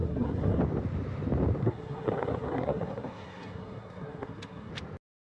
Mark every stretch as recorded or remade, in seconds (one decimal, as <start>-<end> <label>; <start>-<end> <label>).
0.0-0.6 remade; 0.6-1.6 recorded; 1.6-4.7 remade; 4.7-5.2 recorded